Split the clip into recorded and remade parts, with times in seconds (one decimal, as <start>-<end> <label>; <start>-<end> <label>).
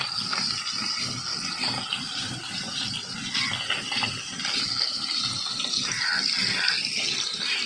0.0-7.7 recorded